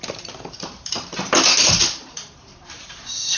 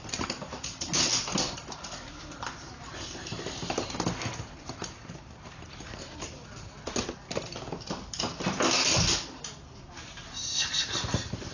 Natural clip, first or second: second